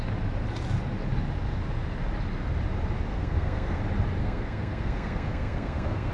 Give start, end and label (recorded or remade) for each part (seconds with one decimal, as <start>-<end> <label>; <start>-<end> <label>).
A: 0.0-3.1 recorded; 3.1-3.8 remade; 3.8-4.2 recorded; 4.2-6.1 remade